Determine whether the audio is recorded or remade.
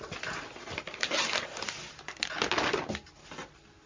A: recorded